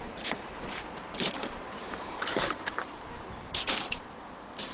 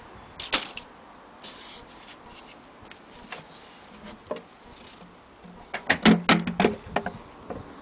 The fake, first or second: first